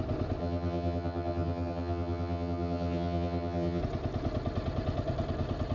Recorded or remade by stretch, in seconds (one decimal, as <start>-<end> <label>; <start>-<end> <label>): 0.0-0.4 recorded; 0.4-3.8 remade; 3.8-5.7 recorded